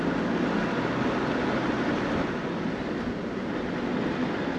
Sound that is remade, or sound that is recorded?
recorded